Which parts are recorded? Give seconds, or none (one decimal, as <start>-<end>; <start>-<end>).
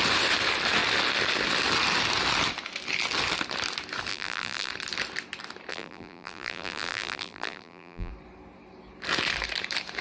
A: 0.0-4.1; 4.7-5.7; 8.1-10.0